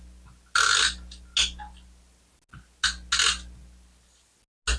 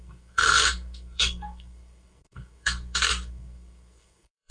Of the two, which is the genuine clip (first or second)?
first